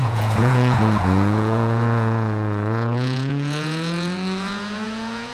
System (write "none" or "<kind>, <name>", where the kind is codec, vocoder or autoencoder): vocoder, Vocos